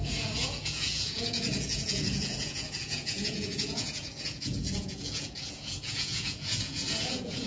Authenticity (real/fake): fake